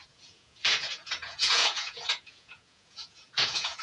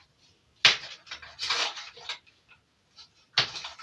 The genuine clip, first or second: second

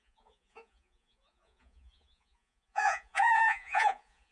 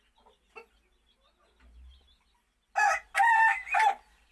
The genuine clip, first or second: second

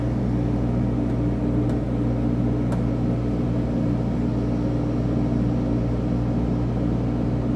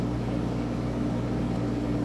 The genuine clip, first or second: first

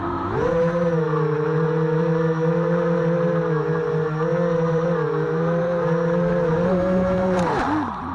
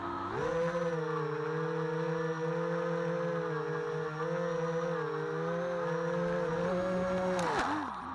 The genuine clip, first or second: second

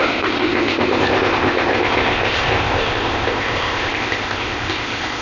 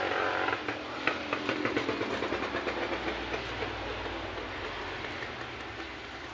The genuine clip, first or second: second